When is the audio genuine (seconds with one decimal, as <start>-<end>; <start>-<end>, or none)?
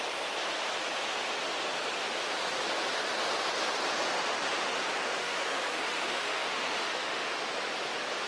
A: 0.0-5.2; 7.3-8.3